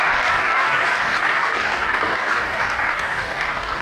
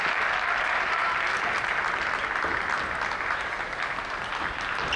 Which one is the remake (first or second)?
first